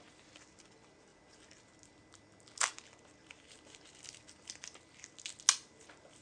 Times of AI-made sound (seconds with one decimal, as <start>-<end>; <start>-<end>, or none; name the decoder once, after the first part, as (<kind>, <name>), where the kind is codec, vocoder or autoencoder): none